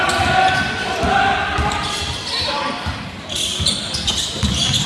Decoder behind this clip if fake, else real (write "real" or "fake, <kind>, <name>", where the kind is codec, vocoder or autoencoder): real